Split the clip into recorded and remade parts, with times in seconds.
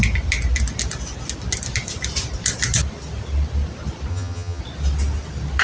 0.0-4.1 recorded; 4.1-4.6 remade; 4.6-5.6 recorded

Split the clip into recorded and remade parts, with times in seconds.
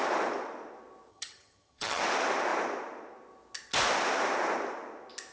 0.0-1.1 recorded; 1.1-2.0 remade; 2.0-5.3 recorded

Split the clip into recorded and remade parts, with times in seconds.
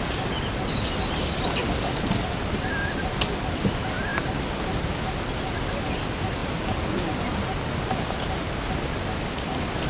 0.0-9.9 recorded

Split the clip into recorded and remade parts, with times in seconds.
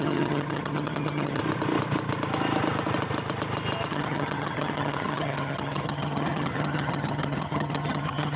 0.0-1.4 remade; 1.4-3.9 recorded; 3.9-8.4 remade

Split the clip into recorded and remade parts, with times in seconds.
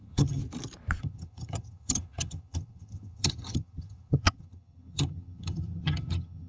0.0-0.4 remade; 0.4-1.0 recorded; 1.0-6.5 remade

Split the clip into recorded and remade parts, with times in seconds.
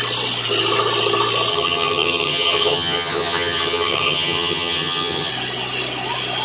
0.0-1.5 recorded; 1.5-5.3 remade; 5.3-6.4 recorded